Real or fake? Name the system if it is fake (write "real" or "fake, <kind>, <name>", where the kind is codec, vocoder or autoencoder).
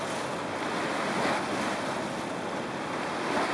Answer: real